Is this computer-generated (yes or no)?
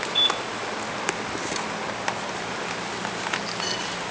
no